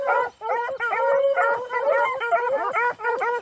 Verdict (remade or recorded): recorded